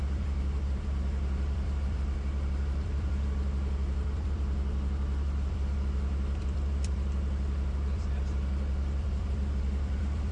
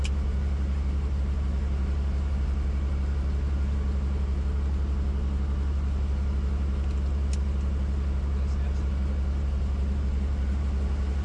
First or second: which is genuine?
second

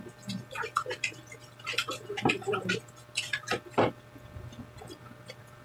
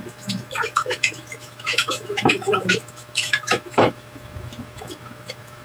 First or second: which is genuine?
first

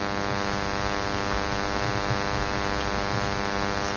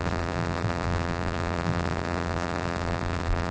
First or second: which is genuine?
first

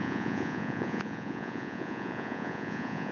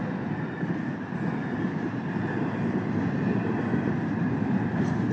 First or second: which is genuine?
second